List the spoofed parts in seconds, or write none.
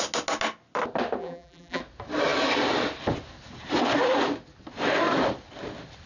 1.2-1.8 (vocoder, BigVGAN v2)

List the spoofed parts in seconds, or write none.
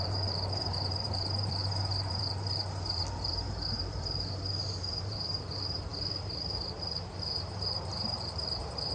0.0-1.6 (vocoder, BigVGAN v2); 2.1-8.9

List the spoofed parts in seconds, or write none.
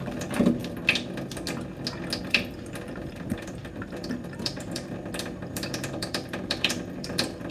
0.0-0.6 (vocoder, BigVGAN v2); 2.2-7.5